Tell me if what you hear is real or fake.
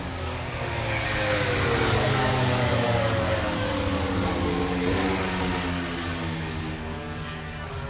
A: fake